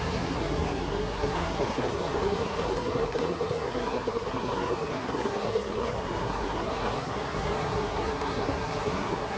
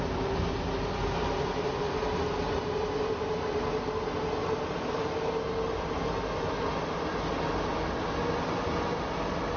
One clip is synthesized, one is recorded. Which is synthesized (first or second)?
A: first